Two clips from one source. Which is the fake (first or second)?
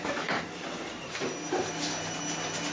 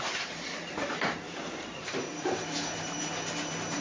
second